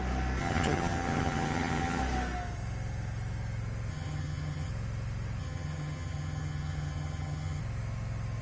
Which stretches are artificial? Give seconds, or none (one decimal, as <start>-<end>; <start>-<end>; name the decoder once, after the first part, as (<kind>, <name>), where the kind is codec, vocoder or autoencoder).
0.4-2.0 (vocoder, HiFi-GAN); 3.9-4.7; 5.4-7.6